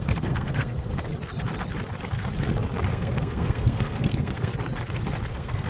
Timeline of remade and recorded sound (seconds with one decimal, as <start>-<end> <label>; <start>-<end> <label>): 0.0-1.1 remade; 1.1-2.9 recorded; 2.9-4.5 remade; 4.5-5.3 recorded; 5.3-5.7 remade